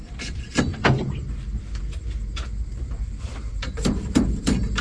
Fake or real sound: real